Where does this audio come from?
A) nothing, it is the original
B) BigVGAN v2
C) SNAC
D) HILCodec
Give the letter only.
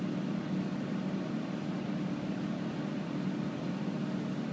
B